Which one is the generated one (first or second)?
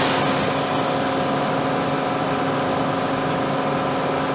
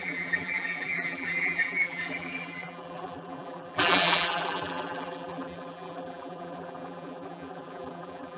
second